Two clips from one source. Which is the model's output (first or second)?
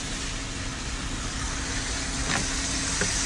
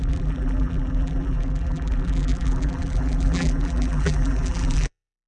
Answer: second